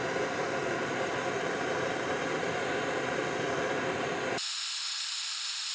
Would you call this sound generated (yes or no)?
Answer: no